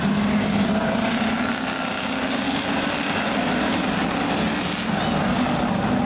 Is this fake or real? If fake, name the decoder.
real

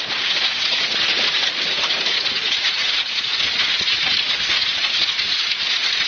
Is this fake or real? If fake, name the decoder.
fake, vocoder, Vocos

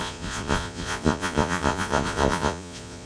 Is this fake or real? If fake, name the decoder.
fake, vocoder, Vocos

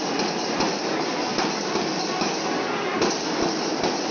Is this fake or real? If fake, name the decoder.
real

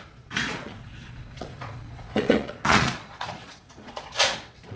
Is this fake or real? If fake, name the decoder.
fake, vocoder, Vocos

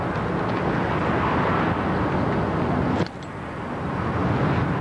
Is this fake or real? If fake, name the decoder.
real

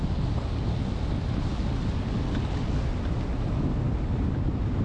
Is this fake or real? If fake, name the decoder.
real